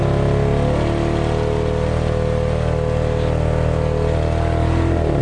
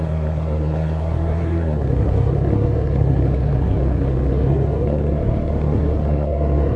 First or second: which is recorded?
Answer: first